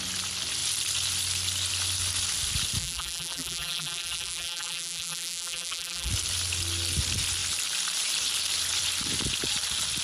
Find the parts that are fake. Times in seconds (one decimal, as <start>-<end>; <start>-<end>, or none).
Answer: 2.8-6.1